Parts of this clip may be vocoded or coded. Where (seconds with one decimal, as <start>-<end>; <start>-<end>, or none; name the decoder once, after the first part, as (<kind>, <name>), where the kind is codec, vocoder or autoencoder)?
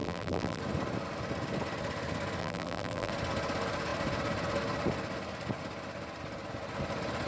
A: 0.0-0.6 (vocoder, BigVGAN v2); 2.4-3.1